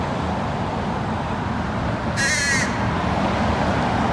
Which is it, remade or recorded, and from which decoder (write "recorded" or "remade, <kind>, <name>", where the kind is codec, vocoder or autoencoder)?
recorded